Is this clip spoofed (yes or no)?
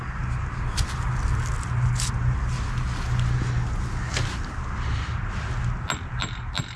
no